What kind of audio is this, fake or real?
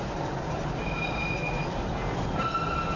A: real